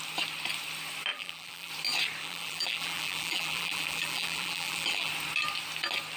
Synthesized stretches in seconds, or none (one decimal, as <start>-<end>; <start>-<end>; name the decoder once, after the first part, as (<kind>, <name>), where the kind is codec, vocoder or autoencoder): 1.1-1.7 (vocoder, BigVGAN v2); 2.2-5.1